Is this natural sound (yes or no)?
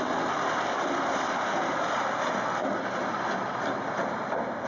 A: yes